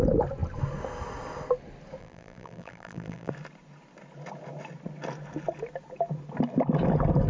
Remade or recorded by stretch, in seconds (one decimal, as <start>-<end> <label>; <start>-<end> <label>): 0.0-2.0 recorded; 2.0-3.3 remade; 3.3-7.3 recorded